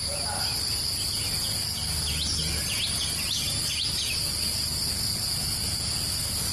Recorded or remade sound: recorded